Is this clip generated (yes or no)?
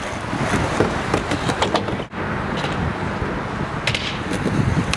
no